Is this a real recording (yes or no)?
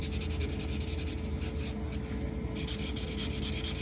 yes